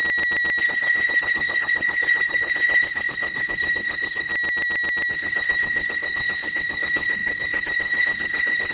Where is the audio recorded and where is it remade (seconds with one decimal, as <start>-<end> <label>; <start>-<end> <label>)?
0.0-0.6 recorded; 0.6-4.3 remade; 4.3-5.1 recorded; 5.1-8.7 remade